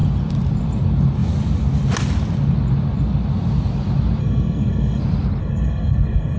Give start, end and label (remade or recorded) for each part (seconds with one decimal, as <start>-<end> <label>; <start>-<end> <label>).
0.0-4.2 recorded; 4.2-5.0 remade; 5.0-5.4 recorded; 5.4-6.4 remade